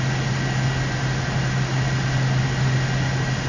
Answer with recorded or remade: recorded